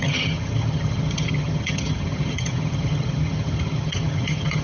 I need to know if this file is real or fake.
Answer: fake